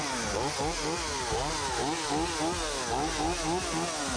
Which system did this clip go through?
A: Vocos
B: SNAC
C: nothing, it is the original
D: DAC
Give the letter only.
C